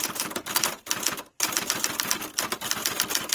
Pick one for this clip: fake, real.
real